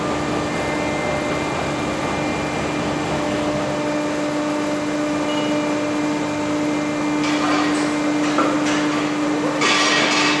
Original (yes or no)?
yes